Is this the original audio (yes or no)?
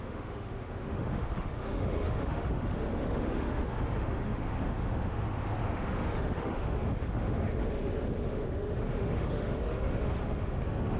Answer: no